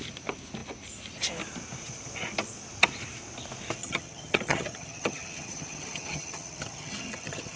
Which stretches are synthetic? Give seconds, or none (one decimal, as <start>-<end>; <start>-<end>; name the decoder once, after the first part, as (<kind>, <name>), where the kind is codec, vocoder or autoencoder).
3.8-7.6 (vocoder, HiFi-GAN)